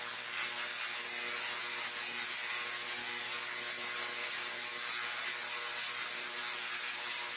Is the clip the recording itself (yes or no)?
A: yes